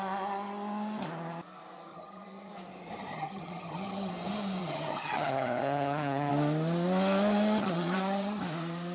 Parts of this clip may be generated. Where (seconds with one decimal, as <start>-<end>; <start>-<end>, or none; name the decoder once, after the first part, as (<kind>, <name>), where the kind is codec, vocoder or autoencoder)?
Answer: 1.9-2.5 (vocoder, HiFi-GAN); 3.1-4.1; 4.6-6.3; 7.6-8.4